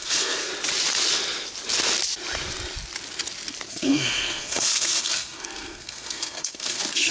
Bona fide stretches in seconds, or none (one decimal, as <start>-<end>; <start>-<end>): 0.5-3.7